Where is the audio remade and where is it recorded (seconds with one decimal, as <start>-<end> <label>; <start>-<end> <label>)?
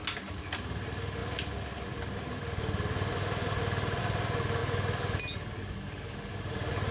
0.0-6.9 recorded